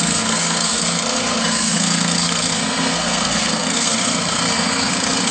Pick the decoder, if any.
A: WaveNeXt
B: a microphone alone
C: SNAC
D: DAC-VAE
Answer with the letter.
C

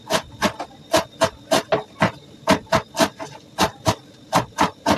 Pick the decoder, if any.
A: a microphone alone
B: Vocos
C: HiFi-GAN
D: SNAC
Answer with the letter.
A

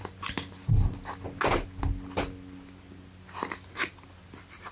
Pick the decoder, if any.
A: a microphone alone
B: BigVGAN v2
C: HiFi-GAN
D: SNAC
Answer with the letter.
A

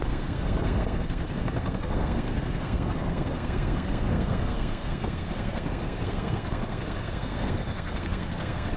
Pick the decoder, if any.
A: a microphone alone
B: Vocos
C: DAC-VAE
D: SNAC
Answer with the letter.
D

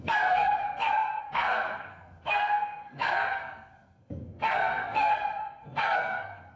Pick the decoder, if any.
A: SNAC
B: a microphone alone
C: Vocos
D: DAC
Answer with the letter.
A